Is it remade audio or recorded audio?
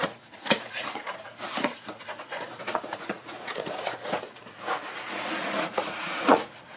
remade